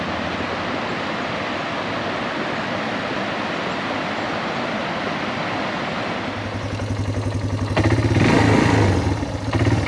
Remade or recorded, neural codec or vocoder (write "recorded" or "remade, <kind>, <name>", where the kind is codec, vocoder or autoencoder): recorded